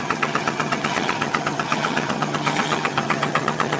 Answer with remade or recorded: remade